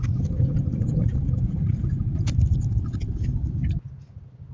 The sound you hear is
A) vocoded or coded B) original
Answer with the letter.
B